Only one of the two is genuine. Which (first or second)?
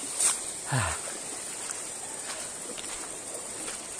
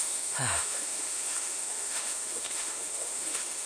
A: first